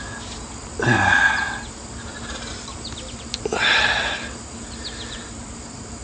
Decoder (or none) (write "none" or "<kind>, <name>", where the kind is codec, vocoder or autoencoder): none